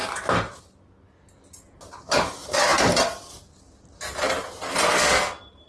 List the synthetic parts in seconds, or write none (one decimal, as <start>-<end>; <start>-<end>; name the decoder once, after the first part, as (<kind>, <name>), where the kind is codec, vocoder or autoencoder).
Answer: none